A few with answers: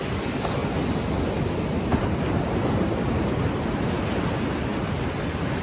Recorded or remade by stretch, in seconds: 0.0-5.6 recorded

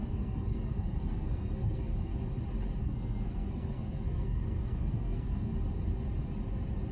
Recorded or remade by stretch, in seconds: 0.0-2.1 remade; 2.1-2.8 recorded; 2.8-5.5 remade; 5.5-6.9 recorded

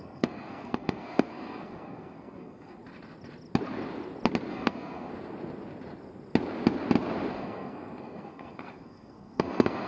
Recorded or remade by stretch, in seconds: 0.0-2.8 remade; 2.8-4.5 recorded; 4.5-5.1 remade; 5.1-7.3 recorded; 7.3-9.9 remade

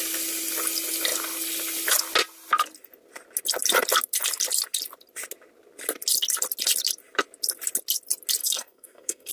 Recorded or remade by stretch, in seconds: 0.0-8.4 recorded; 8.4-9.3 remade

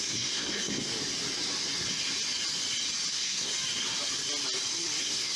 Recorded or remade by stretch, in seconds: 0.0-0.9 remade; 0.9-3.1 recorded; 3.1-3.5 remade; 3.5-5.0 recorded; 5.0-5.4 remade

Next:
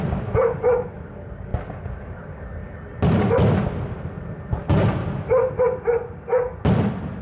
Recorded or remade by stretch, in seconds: 0.0-7.2 recorded

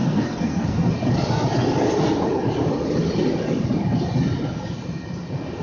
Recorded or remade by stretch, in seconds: 0.0-0.9 remade; 0.9-5.6 recorded

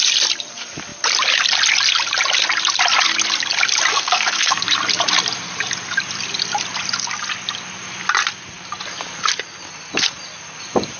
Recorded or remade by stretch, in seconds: 0.0-3.9 recorded; 3.9-4.6 remade; 4.6-11.0 recorded